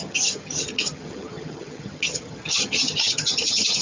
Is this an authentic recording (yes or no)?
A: no